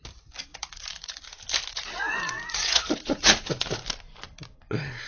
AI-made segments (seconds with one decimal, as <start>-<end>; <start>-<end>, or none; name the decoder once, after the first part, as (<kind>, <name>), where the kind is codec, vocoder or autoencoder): 0.5-1.2 (vocoder, Vocos); 1.7-3.8